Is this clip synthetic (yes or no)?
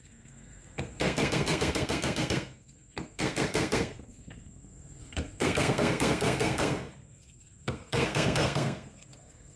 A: yes